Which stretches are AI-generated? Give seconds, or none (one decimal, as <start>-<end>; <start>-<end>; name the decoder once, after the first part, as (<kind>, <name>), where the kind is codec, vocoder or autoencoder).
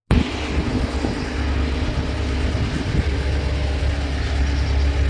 none